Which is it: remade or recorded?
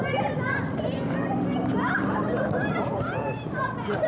recorded